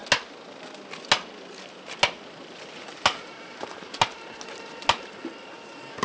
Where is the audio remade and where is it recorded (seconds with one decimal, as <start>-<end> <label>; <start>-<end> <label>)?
0.0-6.0 recorded